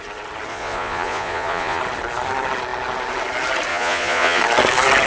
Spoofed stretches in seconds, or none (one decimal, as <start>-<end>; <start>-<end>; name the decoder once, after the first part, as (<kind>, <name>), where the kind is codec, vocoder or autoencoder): 0.5-1.8 (vocoder, Vocos); 3.7-4.4